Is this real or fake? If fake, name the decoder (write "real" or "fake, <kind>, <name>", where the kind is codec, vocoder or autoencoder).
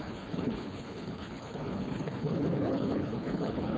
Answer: fake, codec, HILCodec